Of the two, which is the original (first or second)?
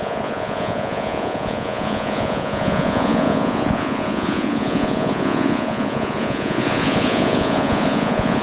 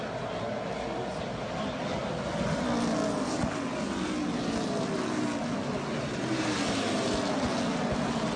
second